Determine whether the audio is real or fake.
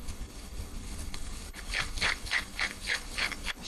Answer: fake